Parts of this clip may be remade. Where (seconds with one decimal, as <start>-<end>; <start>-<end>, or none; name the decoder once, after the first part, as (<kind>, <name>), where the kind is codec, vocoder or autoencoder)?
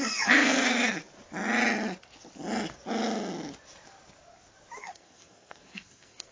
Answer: 0.0-1.0 (codec, SNAC); 4.8-6.3